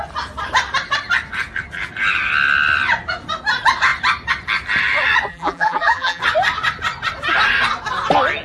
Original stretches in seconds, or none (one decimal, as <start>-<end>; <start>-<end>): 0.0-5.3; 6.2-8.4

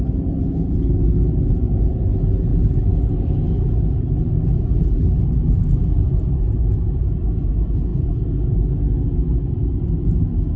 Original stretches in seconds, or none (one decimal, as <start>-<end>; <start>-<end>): 0.0-7.9; 8.7-10.6

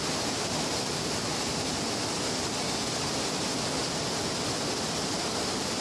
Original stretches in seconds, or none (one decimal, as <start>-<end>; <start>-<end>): 0.0-3.8; 5.3-5.8

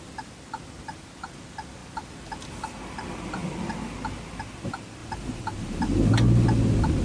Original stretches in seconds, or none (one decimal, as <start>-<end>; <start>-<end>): 0.0-7.0